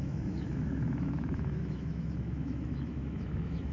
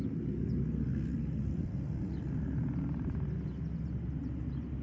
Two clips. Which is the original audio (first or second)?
second